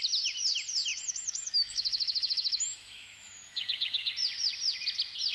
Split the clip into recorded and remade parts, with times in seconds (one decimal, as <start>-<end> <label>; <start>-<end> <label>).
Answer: 0.0-0.9 recorded; 0.9-4.1 remade; 4.1-5.3 recorded